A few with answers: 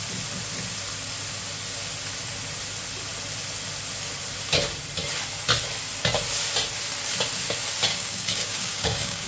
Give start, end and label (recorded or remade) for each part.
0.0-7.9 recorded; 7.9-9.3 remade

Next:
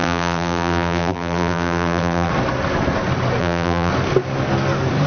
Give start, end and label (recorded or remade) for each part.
0.0-2.3 remade; 2.3-3.4 recorded; 3.4-3.9 remade; 3.9-5.1 recorded

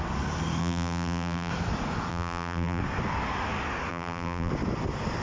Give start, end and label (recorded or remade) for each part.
0.0-0.6 recorded; 0.6-1.5 remade; 1.5-2.1 recorded; 2.1-2.8 remade; 2.8-3.9 recorded; 3.9-4.5 remade; 4.5-5.2 recorded

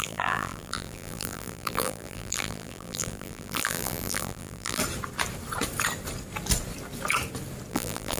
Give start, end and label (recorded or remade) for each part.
0.0-4.8 remade; 4.8-7.7 recorded; 7.7-8.2 remade

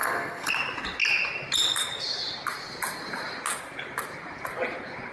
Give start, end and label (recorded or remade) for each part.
0.0-0.5 remade; 0.5-5.1 recorded